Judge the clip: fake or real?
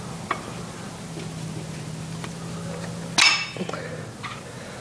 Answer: real